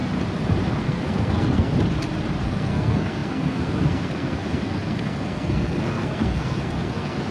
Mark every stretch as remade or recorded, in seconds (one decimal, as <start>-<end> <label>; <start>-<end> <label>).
0.0-0.8 recorded; 0.8-1.7 remade; 1.7-2.4 recorded; 2.4-7.3 remade